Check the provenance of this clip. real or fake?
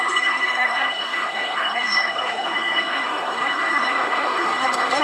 fake